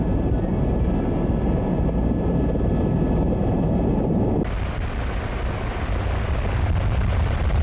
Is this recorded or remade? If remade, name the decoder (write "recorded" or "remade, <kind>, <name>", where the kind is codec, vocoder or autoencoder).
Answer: recorded